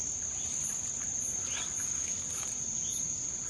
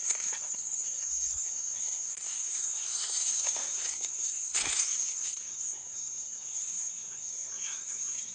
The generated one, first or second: second